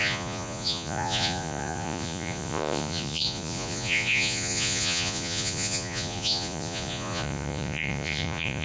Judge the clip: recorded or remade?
remade